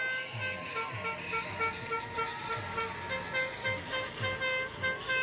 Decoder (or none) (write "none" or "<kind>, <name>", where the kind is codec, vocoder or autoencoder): none